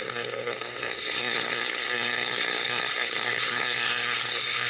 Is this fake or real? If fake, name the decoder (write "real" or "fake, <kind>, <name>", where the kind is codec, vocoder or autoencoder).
fake, codec, SNAC